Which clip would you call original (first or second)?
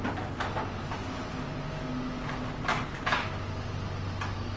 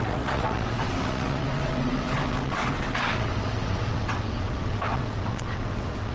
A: first